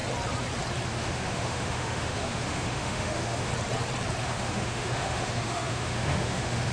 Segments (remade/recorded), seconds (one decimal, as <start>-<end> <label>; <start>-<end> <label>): 0.0-0.9 recorded; 0.9-3.5 remade; 3.5-4.2 recorded; 4.2-6.7 remade